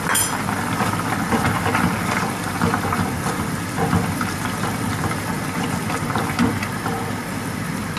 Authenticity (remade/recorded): remade